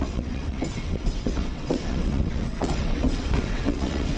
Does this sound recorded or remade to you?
remade